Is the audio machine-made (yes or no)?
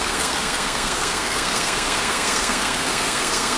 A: yes